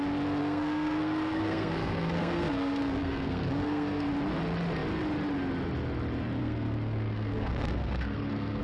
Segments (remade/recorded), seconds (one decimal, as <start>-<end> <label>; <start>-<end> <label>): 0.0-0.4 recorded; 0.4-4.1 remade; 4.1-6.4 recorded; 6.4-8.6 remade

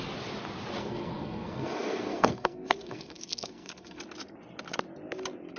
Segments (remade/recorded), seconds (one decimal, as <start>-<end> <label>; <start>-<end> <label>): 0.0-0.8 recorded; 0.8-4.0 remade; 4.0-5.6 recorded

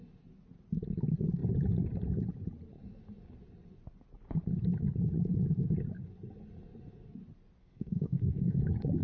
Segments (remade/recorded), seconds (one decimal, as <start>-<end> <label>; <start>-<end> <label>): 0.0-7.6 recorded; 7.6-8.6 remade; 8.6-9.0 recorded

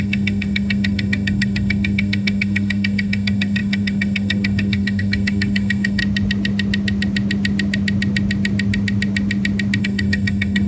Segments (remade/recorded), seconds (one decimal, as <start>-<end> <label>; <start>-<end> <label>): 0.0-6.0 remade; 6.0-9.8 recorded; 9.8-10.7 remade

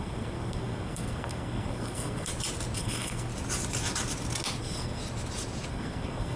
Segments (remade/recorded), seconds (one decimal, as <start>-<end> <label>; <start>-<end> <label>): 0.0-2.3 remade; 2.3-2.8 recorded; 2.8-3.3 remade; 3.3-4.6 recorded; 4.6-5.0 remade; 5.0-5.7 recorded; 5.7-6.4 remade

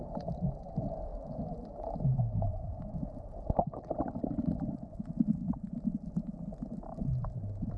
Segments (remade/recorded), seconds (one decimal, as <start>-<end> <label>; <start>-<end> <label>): 0.0-7.8 recorded